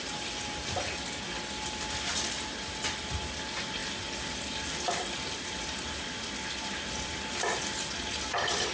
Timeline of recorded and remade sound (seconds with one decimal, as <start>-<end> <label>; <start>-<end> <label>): 0.0-3.8 recorded; 3.8-7.1 remade; 7.1-8.7 recorded